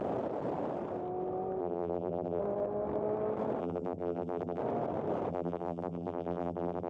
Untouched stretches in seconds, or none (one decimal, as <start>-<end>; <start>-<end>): 0.0-1.6; 2.4-3.6; 4.6-5.3

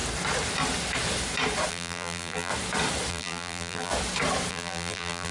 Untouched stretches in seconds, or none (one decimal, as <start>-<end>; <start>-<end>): 0.0-1.7; 2.5-3.1; 3.9-4.5

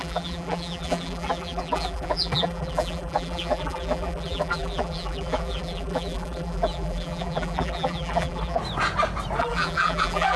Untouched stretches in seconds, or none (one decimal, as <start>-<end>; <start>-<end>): 8.6-9.4

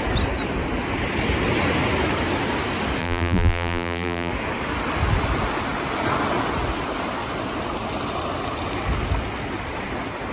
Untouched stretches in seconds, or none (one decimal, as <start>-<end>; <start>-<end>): 0.0-3.0; 4.3-10.3

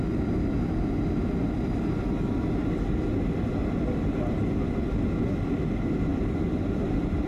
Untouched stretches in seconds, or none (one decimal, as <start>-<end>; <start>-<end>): 0.0-6.1

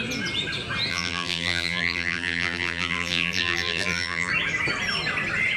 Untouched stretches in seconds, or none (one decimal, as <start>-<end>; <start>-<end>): 0.0-0.9; 4.3-5.6

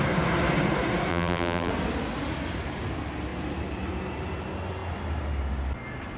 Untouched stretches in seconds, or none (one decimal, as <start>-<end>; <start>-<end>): 0.0-1.1; 1.7-6.2

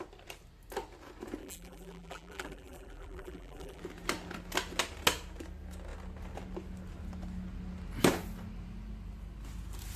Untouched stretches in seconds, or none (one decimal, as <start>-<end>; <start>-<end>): 0.0-1.4; 3.8-10.0